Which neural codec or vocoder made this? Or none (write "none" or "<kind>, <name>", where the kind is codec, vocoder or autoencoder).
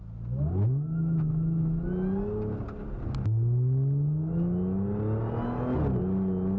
none